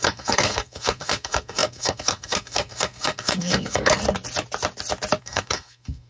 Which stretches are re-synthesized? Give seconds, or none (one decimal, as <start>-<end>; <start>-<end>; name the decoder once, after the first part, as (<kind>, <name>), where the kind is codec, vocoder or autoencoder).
0.0-4.0 (codec, SNAC); 5.2-6.1